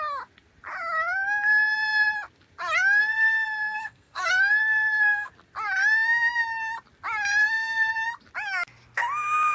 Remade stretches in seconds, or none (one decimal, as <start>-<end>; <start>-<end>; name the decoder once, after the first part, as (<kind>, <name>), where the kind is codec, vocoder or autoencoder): 3.0-5.3 (codec, SNAC); 7.4-7.9